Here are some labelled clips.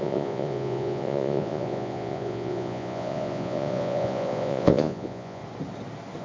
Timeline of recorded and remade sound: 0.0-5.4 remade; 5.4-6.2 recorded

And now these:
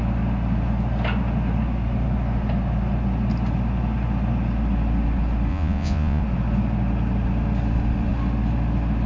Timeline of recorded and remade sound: 0.0-5.5 recorded; 5.5-6.2 remade; 6.2-9.1 recorded

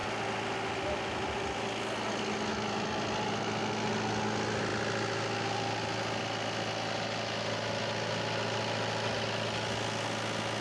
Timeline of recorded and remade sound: 0.0-10.6 recorded

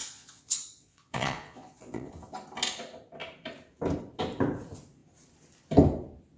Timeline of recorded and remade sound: 0.0-2.1 remade; 2.1-6.4 recorded